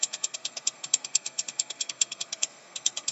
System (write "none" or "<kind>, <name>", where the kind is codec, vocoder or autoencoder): codec, SNAC